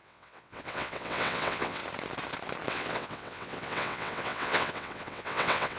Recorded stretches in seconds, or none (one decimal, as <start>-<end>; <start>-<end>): 1.8-2.7